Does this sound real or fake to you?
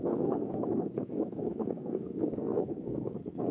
fake